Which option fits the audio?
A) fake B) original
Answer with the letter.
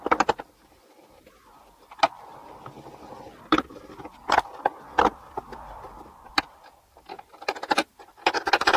B